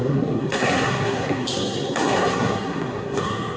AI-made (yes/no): yes